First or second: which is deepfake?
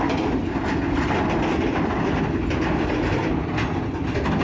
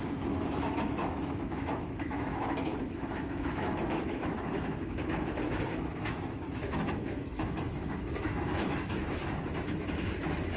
second